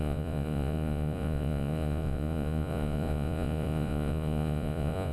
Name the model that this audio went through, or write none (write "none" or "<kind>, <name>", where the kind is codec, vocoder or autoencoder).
vocoder, Vocos